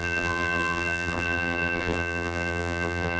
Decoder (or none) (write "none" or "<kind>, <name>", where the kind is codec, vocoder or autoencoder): vocoder, BigVGAN v2